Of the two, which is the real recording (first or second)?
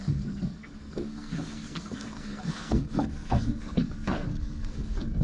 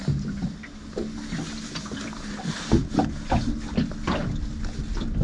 second